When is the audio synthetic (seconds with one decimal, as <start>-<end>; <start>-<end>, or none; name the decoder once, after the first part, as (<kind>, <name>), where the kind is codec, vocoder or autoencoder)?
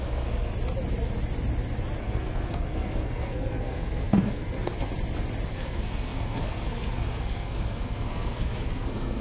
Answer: 0.0-0.5 (codec, SNAC); 2.0-4.9; 5.5-9.2